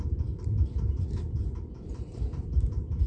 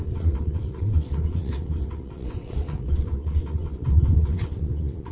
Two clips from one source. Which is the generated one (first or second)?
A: second